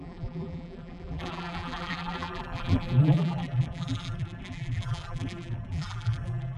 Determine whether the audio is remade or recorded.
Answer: remade